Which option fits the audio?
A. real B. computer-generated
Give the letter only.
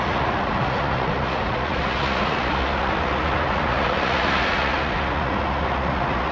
B